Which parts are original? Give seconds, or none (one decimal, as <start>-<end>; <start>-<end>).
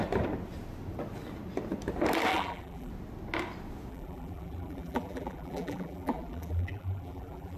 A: 0.0-2.3; 2.9-3.9